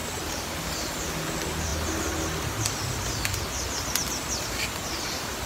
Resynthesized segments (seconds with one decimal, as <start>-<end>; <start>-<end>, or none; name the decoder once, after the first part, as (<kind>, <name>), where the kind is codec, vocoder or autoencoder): 0.0-1.1 (vocoder, BigVGAN v2)